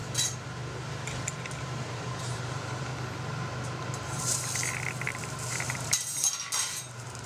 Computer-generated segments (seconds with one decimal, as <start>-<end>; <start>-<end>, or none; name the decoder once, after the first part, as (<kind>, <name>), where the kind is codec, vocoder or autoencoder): 1.6-2.9 (vocoder, BigVGAN v2); 5.2-7.3